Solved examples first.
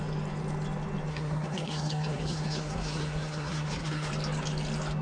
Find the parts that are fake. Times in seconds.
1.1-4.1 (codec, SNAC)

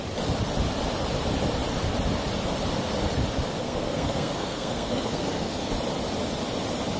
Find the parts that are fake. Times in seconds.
3.6-5.7 (codec, SNAC)

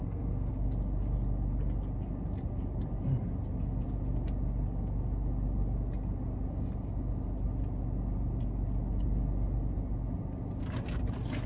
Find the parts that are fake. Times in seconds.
0.0-0.5 (codec, SNAC)

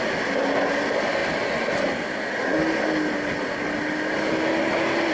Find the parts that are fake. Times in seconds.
none

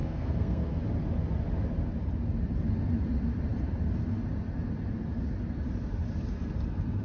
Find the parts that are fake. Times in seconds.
0.0-0.8 (codec, SNAC)

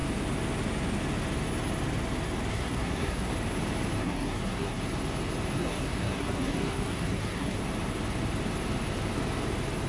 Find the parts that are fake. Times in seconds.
2.5-3.3 (codec, SNAC); 4.0-4.8; 5.6-7.6